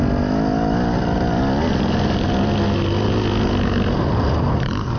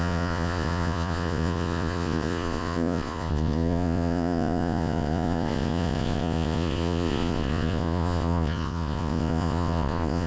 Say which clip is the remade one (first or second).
second